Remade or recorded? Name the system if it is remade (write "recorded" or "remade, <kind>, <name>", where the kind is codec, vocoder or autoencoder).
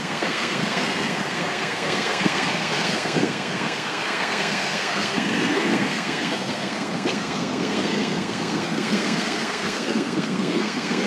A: remade, codec, SNAC